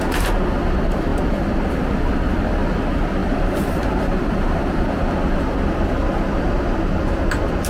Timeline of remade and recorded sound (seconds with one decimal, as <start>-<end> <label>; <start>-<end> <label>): 0.0-3.2 recorded; 3.2-5.0 remade; 5.0-7.7 recorded